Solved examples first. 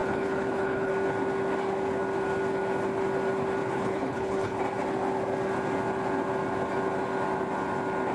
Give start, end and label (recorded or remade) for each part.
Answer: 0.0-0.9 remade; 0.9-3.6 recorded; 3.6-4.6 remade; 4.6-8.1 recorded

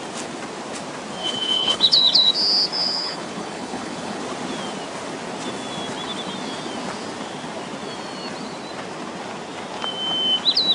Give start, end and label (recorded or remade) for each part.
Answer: 0.0-1.2 recorded; 1.2-2.3 remade; 2.3-2.8 recorded; 2.8-4.2 remade; 4.2-10.7 recorded

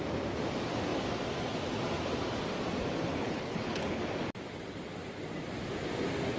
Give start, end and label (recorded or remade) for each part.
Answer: 0.0-3.1 recorded; 3.1-4.0 remade; 4.0-6.4 recorded

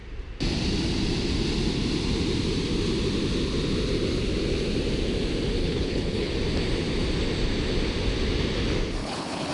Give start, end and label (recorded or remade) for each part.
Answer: 0.0-5.6 recorded; 5.6-6.3 remade; 6.3-9.0 recorded; 9.0-9.5 remade

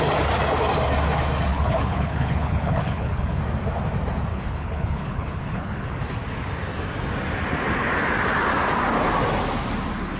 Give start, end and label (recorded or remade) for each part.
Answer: 0.0-1.5 recorded; 1.5-3.4 remade; 3.4-4.3 recorded; 4.3-5.9 remade; 5.9-10.2 recorded

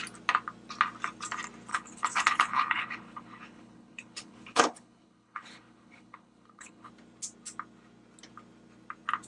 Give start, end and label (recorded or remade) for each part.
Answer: 0.0-1.7 recorded; 1.7-6.9 remade; 6.9-9.3 recorded

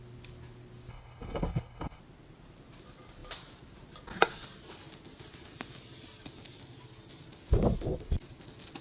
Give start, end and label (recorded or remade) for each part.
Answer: 0.0-0.9 recorded; 0.9-2.0 remade; 2.0-8.8 recorded